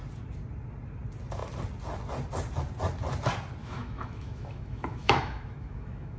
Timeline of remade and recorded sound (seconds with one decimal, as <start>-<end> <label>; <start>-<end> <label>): 0.0-3.6 recorded; 3.6-6.2 remade